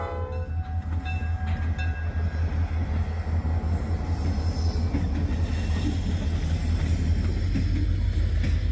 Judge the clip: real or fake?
real